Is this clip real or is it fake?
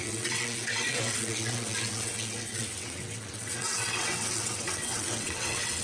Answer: fake